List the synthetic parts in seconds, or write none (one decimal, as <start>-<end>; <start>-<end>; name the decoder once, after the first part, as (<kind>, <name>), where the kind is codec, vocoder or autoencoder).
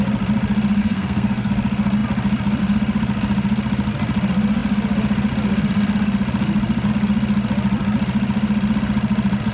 0.8-1.5 (codec, SNAC)